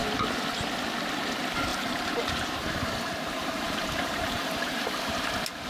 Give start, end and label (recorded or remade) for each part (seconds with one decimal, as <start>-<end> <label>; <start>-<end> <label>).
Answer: 0.0-1.7 recorded; 1.7-5.1 remade; 5.1-5.7 recorded